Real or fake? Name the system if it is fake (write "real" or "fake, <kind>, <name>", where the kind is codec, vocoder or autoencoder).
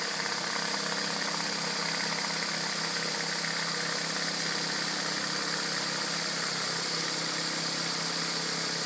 real